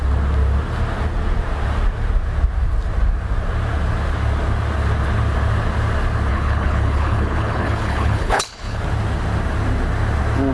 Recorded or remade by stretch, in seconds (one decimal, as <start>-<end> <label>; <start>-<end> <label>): 0.0-6.3 recorded; 6.3-8.8 remade; 8.8-10.5 recorded